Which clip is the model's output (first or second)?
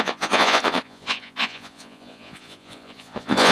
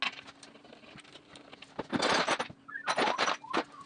first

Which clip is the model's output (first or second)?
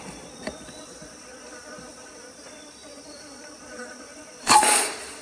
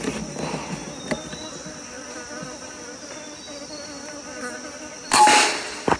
first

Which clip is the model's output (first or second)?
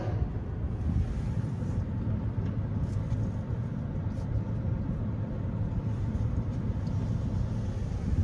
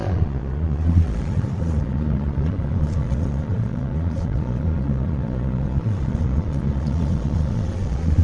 second